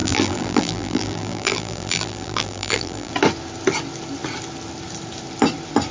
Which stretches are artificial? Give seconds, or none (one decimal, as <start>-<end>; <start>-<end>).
0.0-3.1